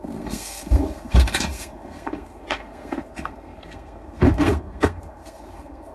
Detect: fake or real fake